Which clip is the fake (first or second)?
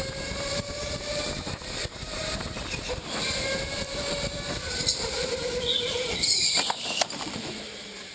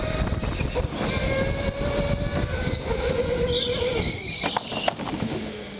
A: first